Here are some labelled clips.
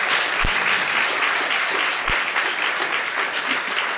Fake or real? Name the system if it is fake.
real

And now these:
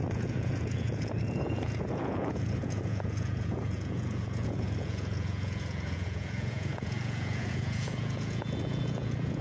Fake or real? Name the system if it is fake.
fake, vocoder, Vocos